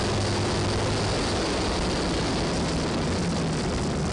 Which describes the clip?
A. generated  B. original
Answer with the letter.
B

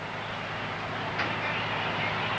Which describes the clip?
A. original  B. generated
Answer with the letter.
A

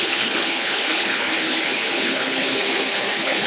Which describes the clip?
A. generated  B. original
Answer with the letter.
A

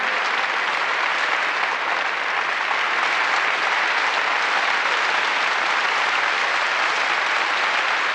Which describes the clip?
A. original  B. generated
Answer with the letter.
A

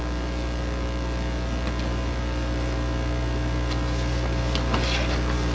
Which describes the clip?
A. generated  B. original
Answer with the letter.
B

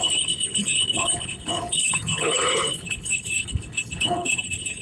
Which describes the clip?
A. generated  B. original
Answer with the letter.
A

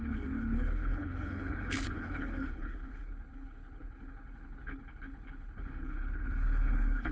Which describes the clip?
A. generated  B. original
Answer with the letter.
A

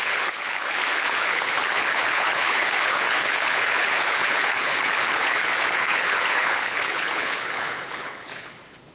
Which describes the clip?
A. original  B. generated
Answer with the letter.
B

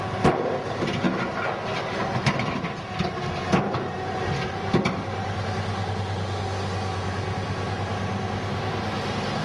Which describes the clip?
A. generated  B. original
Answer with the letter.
B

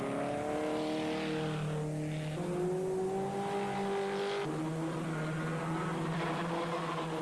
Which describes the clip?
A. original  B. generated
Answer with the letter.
A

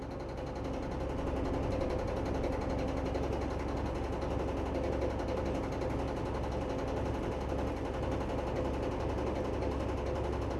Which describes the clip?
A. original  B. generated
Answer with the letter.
A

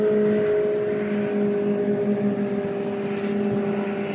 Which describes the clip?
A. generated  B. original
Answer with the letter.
B